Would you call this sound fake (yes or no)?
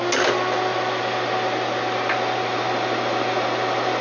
no